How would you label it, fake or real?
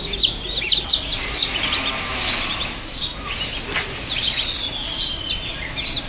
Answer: real